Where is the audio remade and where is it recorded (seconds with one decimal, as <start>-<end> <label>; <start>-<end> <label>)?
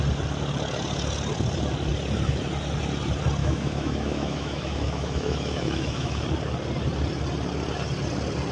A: 0.0-3.4 recorded; 3.4-6.2 remade; 6.2-8.5 recorded